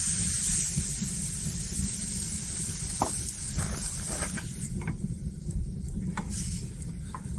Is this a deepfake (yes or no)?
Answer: no